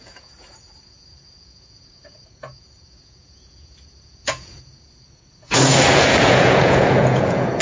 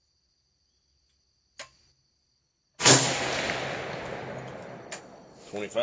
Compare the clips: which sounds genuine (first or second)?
second